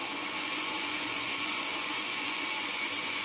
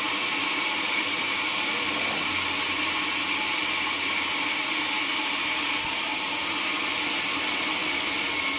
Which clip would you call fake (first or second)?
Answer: first